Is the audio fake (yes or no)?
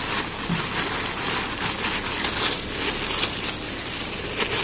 no